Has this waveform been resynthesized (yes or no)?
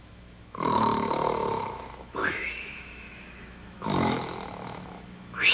yes